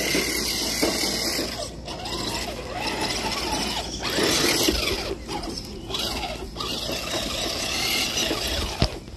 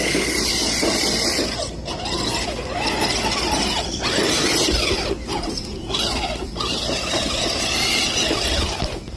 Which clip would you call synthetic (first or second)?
second